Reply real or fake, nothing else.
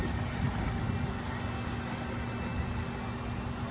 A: real